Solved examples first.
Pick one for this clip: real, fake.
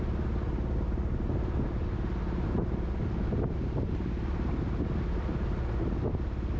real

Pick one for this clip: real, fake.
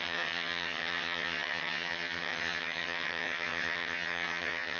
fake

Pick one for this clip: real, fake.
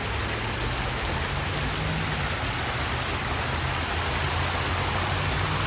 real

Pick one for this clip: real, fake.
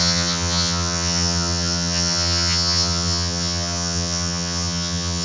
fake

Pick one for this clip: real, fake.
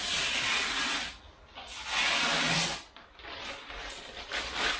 real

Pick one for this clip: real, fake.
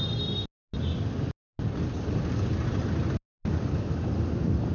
real